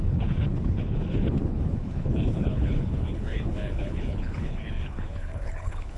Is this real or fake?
fake